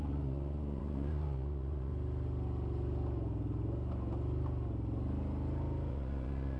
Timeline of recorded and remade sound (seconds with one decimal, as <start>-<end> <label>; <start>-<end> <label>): 0.0-1.9 remade; 1.9-5.9 recorded; 5.9-6.6 remade